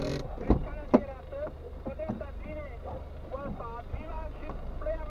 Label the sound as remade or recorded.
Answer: recorded